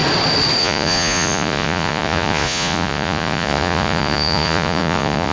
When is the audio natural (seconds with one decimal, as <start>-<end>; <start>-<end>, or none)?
0.0-0.6